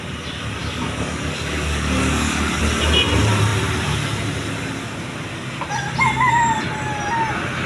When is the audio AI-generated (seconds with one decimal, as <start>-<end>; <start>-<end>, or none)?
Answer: 0.6-2.6